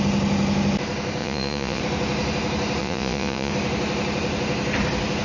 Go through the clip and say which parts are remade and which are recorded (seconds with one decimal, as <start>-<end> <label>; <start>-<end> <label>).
0.0-1.2 recorded; 1.2-1.8 remade; 1.8-2.8 recorded; 2.8-3.5 remade; 3.5-5.2 recorded